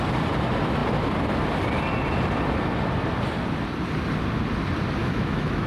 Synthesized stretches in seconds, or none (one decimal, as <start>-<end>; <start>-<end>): 5.0-5.7